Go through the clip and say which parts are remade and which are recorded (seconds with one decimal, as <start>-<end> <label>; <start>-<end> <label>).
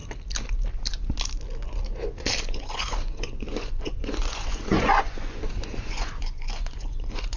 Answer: 0.0-2.4 recorded; 2.4-7.4 remade